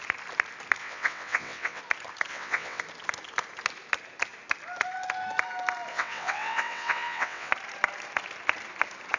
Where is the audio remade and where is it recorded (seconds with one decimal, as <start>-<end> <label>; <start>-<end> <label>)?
0.0-0.8 recorded; 0.8-1.8 remade; 1.8-2.3 recorded; 2.3-2.8 remade; 2.8-5.9 recorded; 5.9-7.5 remade; 7.5-9.2 recorded